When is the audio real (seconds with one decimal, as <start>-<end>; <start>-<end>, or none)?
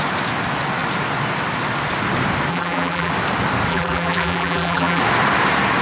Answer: 0.0-2.5; 3.1-3.7; 5.0-5.8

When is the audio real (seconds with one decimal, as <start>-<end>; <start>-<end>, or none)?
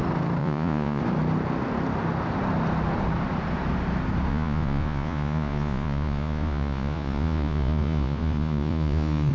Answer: 0.0-0.4; 1.0-4.3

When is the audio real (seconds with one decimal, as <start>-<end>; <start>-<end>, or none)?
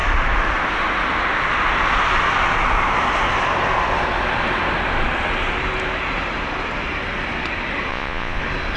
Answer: 0.0-7.9; 8.4-8.8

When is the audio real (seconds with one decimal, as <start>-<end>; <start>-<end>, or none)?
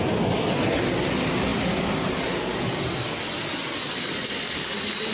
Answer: 0.0-5.1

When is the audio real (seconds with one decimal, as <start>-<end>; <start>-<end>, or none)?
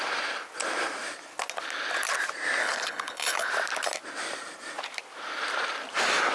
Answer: 0.0-2.6; 3.5-6.3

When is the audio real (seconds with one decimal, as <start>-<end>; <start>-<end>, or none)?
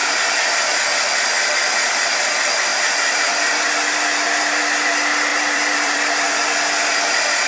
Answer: 0.0-2.7; 4.6-5.3; 6.3-7.5